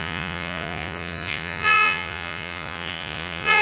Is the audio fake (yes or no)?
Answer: yes